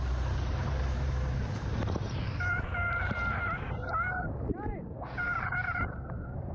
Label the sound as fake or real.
fake